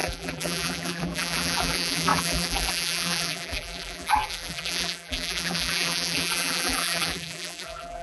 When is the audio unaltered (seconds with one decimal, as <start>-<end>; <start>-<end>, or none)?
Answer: none

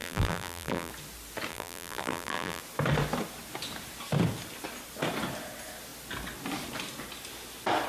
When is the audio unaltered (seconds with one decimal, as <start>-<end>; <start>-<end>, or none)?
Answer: 0.9-1.5; 2.6-7.9

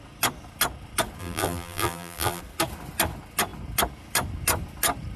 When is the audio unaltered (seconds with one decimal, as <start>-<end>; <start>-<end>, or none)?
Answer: 0.0-1.2; 2.4-5.2

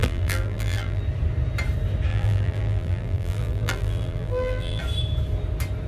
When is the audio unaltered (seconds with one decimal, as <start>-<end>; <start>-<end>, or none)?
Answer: 1.0-2.1; 4.8-5.9

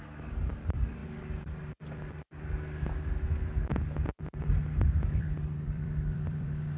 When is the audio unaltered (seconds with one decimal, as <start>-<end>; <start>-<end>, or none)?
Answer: 1.0-5.1